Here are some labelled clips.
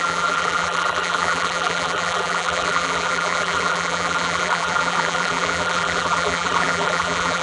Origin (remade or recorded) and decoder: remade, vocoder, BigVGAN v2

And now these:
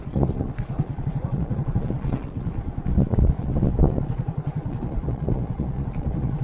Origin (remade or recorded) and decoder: remade, vocoder, Vocos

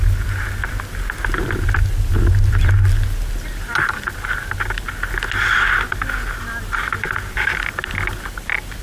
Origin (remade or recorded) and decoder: recorded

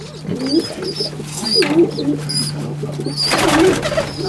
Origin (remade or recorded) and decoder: recorded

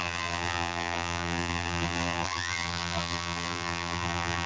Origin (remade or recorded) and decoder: remade, vocoder, BigVGAN v2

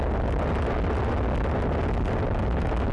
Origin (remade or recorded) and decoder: recorded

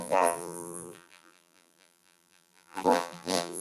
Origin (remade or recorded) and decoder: remade, vocoder, BigVGAN v2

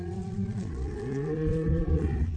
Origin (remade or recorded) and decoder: remade, vocoder, Vocos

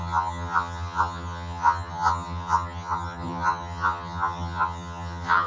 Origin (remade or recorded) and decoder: remade, vocoder, HiFi-GAN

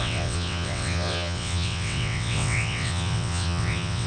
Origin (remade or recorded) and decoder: remade, vocoder, WaveNeXt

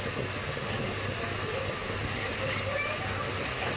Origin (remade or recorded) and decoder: recorded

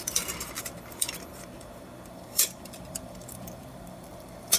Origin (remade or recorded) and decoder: remade, vocoder, BigVGAN v2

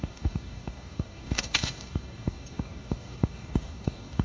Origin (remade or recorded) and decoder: remade, codec, DAC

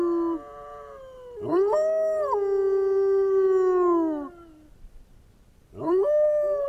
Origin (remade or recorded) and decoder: recorded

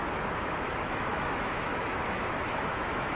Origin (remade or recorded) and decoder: remade, autoencoder, DAC-VAE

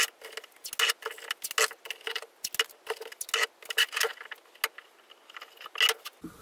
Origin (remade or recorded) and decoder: recorded